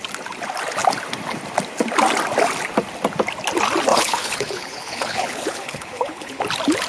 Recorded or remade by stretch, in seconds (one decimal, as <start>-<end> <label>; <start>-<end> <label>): 0.0-3.9 recorded; 3.9-6.4 remade; 6.4-6.9 recorded

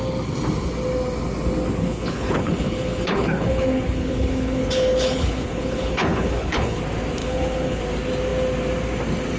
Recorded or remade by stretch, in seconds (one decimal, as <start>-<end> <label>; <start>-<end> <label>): 0.0-1.8 recorded; 1.8-6.8 remade; 6.8-7.2 recorded; 7.2-7.8 remade; 7.8-9.4 recorded

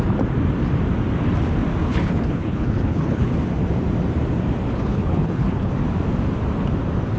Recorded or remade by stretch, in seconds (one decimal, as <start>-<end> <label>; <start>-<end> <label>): 0.0-1.8 recorded; 1.8-3.3 remade; 3.3-4.7 recorded; 4.7-5.7 remade; 5.7-7.2 recorded

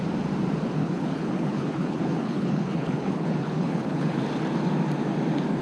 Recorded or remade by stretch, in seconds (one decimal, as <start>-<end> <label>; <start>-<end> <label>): 0.0-0.8 recorded; 0.8-4.2 remade; 4.2-5.6 recorded

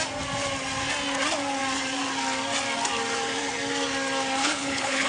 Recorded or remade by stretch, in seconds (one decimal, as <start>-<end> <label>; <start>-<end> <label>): 0.0-4.4 recorded; 4.4-5.1 remade